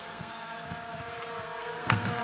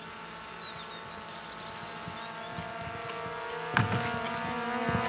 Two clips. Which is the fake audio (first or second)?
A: first